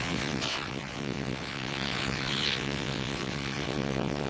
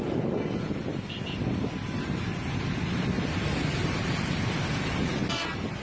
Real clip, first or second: second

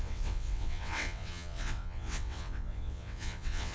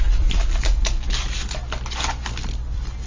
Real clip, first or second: second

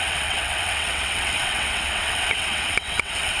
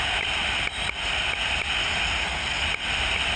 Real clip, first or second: second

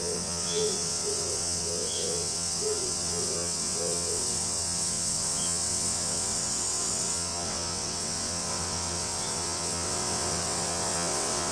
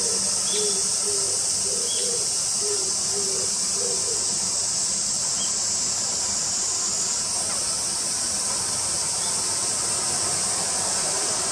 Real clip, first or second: second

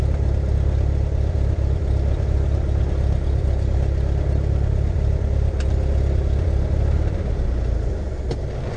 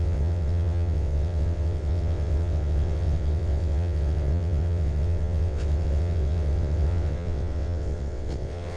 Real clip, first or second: first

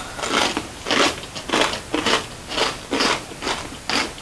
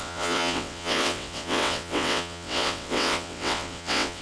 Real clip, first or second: first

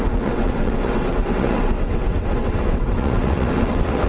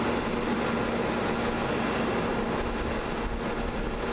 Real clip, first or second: second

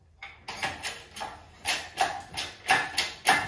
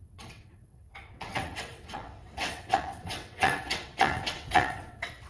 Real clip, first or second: first